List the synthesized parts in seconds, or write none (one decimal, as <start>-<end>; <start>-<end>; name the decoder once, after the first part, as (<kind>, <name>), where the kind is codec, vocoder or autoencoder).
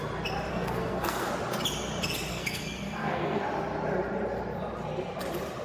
0.5-1.3 (codec, SNAC); 2.3-3.4